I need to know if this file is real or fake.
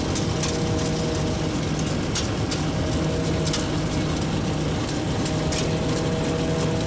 real